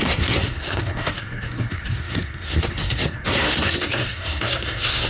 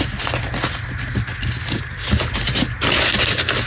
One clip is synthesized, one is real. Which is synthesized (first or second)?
first